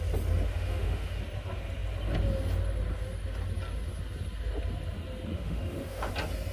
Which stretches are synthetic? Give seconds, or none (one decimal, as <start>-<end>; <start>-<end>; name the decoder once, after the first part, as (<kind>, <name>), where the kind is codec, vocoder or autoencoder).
0.5-1.2 (autoencoder, DAC-VAE); 5.3-6.1